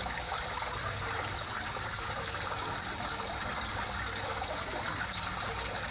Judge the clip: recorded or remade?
recorded